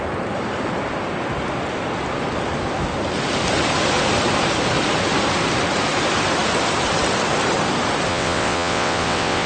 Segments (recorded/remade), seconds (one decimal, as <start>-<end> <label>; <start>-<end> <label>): 0.0-8.1 recorded; 8.1-9.5 remade